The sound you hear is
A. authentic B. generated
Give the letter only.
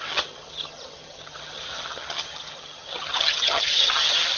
B